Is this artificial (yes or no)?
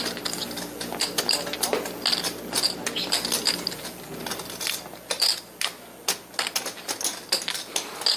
no